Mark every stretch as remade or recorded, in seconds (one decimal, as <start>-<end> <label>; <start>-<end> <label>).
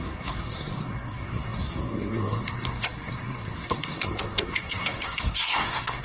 0.0-6.0 remade